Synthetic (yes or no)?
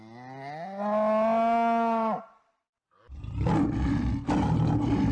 no